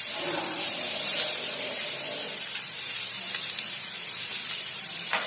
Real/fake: fake